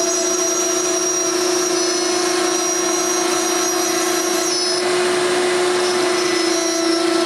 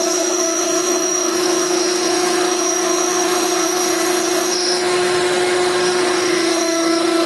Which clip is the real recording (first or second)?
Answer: first